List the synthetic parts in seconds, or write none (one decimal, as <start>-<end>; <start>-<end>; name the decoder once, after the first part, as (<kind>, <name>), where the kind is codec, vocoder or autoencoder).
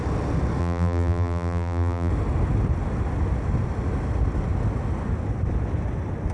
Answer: 0.6-2.1 (vocoder, BigVGAN v2)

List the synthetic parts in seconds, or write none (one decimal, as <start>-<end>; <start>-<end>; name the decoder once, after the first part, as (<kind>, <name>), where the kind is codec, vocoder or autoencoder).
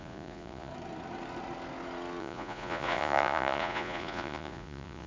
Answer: 0.0-0.7 (vocoder, Vocos); 2.2-5.1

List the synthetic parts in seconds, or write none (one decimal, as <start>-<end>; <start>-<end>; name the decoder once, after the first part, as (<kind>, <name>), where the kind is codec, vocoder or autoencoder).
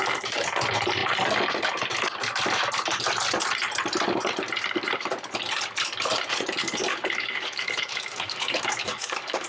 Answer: 6.6-9.5 (codec, DAC)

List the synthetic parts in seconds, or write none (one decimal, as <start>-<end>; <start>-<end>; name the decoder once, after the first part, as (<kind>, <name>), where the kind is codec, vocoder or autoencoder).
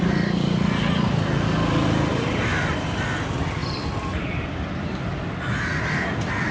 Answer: 3.6-4.3 (vocoder, BigVGAN v2)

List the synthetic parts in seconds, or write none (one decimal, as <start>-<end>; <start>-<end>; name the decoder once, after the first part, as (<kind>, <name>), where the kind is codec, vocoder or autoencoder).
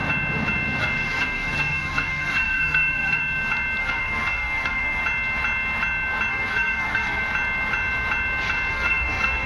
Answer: 0.8-3.2 (codec, SNAC); 3.8-5.0; 6.3-7.2; 8.7-9.5